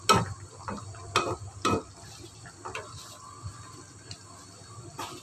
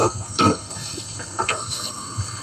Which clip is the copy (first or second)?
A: second